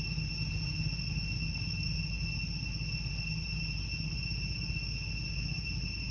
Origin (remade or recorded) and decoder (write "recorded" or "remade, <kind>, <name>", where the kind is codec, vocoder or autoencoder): recorded